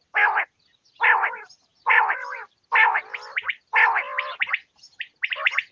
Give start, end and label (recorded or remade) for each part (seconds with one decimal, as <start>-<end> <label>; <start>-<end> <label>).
0.0-1.7 recorded; 1.7-3.6 remade; 3.6-5.7 recorded